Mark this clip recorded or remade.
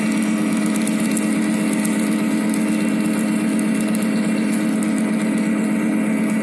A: recorded